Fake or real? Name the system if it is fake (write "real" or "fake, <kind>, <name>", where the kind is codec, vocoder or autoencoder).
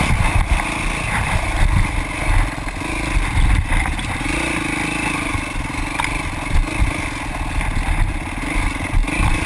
real